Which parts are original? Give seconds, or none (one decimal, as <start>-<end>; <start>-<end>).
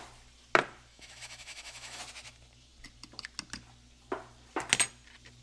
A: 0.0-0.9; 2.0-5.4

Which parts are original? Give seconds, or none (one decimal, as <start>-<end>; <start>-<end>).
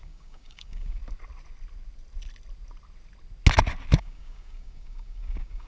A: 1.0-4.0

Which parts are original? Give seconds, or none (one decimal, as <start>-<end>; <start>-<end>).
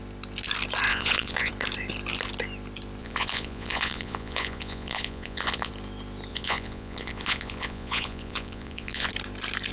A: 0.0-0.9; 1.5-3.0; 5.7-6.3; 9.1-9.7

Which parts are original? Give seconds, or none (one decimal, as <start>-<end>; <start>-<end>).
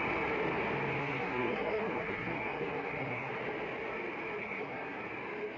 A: 0.0-1.0; 3.3-4.4; 5.0-5.6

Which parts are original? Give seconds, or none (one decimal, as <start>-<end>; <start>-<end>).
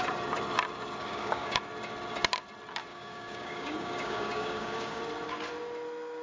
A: 0.0-1.0; 1.6-2.9; 5.0-6.2